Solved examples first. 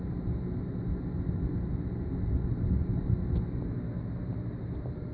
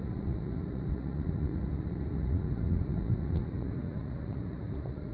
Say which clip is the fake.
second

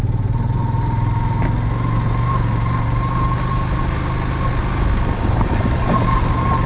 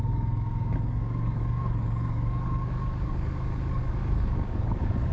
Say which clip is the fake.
second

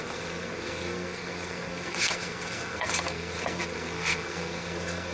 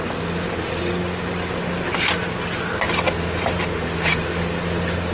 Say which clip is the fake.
first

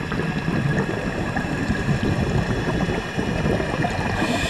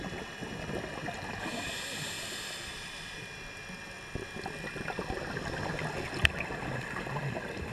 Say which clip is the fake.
first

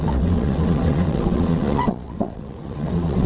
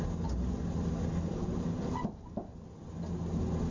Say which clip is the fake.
first